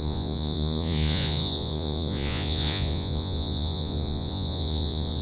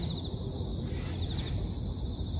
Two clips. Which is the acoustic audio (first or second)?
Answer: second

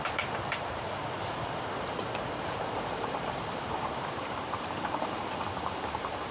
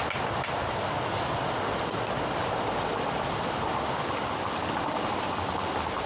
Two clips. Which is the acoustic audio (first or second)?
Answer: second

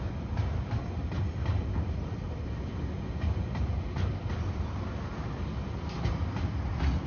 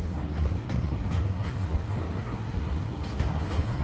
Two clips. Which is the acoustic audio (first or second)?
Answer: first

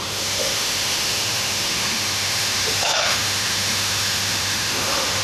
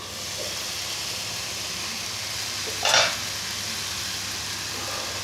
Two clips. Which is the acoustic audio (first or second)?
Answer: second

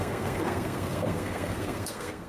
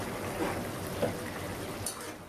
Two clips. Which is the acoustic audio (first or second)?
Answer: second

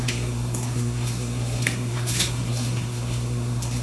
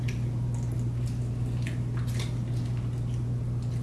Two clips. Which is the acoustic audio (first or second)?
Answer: second